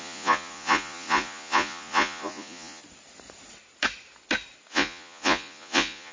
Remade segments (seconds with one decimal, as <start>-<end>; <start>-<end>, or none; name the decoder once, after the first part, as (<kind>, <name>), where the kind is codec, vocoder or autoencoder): 0.0-2.8 (vocoder, Vocos); 4.7-6.1